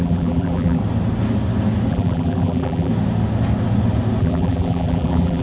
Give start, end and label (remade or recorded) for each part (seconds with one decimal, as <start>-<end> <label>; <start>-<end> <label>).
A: 0.0-0.8 remade; 0.8-1.9 recorded; 1.9-2.9 remade; 2.9-4.2 recorded; 4.2-5.4 remade